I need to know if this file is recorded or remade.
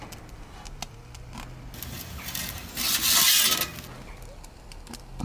recorded